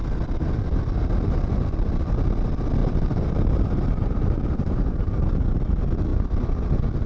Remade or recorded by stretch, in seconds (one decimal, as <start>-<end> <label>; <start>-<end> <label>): 0.0-2.8 recorded; 2.8-5.4 remade; 5.4-7.1 recorded